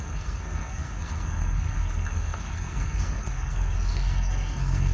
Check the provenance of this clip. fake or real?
fake